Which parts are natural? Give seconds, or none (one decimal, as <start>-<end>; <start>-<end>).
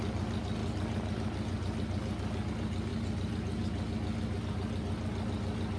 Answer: 0.0-5.8